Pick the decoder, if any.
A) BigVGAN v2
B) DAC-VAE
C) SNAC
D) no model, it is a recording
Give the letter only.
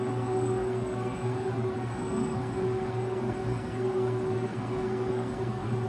C